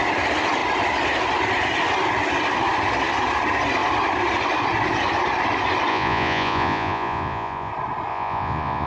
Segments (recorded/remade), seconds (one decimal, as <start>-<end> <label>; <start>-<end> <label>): 0.0-5.9 recorded; 5.9-7.7 remade; 7.7-8.1 recorded; 8.1-8.9 remade